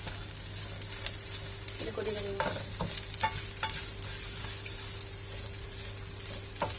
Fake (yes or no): no